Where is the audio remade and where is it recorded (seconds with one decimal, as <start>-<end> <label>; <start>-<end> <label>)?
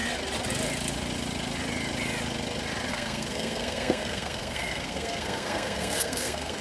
0.0-2.9 recorded; 2.9-6.6 remade